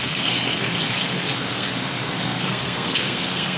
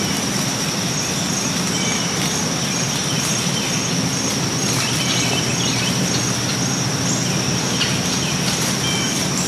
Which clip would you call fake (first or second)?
first